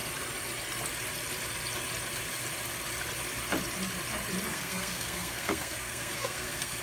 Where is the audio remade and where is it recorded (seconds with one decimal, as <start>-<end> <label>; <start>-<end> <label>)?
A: 0.0-4.5 recorded; 4.5-6.8 remade